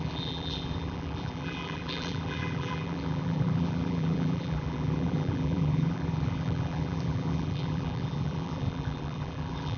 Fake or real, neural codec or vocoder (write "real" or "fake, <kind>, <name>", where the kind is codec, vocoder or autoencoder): fake, vocoder, BigVGAN v2